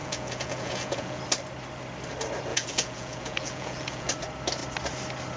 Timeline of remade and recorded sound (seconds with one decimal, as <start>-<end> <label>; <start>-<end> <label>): 0.0-1.2 remade; 1.2-2.5 recorded; 2.5-4.1 remade; 4.1-5.4 recorded